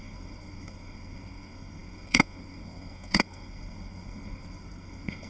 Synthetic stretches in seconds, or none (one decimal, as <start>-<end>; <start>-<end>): 0.0-5.3